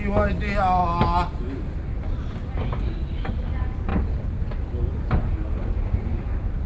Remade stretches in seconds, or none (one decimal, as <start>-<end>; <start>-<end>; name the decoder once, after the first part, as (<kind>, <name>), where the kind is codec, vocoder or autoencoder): none